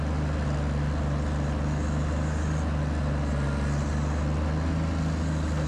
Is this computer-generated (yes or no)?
no